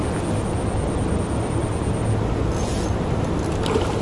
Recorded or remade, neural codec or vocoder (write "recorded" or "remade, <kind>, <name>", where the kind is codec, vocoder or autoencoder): recorded